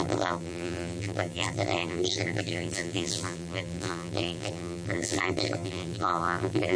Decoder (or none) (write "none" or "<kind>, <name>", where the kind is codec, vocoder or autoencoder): vocoder, BigVGAN v2